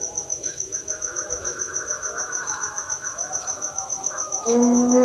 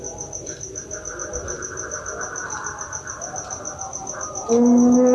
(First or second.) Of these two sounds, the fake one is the first